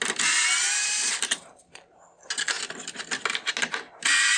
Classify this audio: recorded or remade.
recorded